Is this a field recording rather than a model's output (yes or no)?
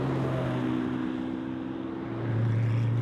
yes